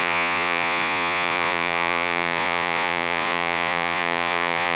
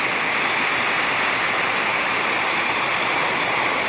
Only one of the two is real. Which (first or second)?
second